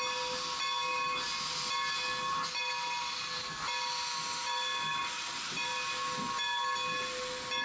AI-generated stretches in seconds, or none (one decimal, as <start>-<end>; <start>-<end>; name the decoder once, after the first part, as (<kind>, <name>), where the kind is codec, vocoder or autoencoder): none